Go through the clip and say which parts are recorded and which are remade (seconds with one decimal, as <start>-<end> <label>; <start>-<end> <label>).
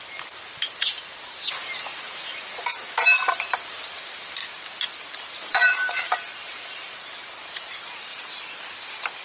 0.0-4.4 remade; 4.4-5.2 recorded; 5.2-8.1 remade; 8.1-9.2 recorded